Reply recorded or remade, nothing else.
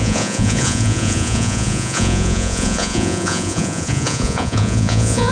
remade